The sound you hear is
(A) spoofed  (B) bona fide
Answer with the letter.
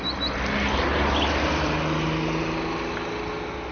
B